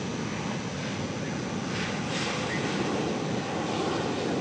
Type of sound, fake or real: real